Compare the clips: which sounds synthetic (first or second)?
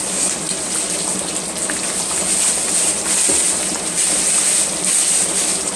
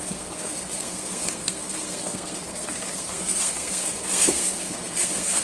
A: second